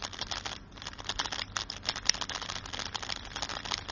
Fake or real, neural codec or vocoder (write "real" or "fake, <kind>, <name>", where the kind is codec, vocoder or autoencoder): real